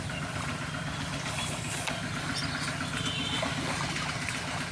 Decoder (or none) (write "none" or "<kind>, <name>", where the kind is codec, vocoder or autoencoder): none